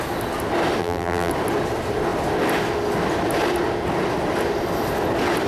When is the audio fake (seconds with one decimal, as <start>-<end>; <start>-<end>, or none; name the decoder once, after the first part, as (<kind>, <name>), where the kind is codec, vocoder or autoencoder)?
0.8-1.3 (vocoder, BigVGAN v2)